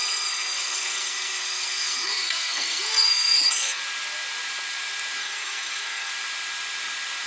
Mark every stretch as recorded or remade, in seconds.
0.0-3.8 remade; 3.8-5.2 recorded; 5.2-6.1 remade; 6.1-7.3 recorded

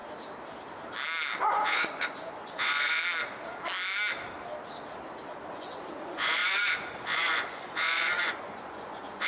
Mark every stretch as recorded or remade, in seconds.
0.0-1.4 recorded; 1.4-3.0 remade; 3.0-5.5 recorded; 5.5-9.3 remade